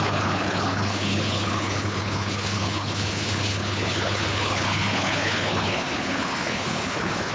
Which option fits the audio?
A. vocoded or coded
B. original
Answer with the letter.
A